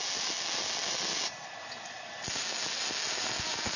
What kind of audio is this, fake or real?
real